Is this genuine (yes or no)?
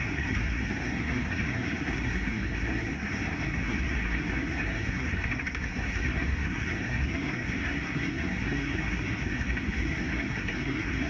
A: no